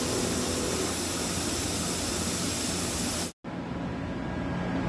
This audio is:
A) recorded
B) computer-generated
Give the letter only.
A